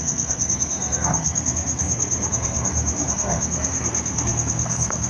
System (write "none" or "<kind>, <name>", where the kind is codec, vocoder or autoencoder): codec, SNAC